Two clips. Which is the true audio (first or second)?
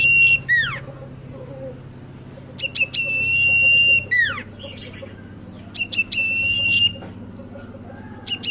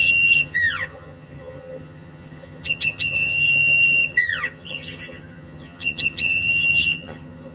first